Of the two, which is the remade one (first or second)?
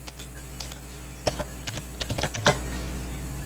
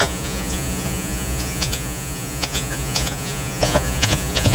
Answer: second